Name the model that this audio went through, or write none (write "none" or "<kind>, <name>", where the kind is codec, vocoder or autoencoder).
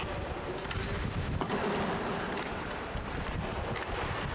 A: none